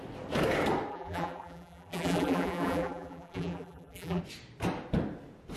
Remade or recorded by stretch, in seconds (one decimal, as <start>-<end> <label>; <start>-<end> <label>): 0.0-0.9 recorded; 0.9-4.2 remade; 4.2-5.6 recorded